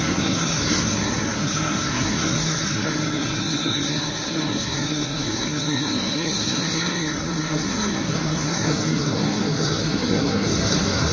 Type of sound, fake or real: fake